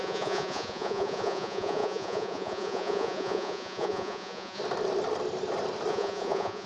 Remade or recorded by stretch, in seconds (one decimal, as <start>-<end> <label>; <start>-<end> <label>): 0.0-4.6 remade; 4.6-5.9 recorded; 5.9-6.7 remade